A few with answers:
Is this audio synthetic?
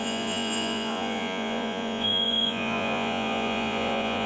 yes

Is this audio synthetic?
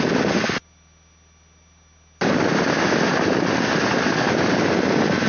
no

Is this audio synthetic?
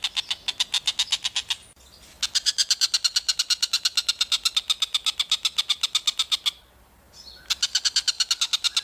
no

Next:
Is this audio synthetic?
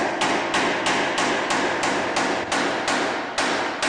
no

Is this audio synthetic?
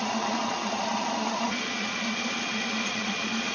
yes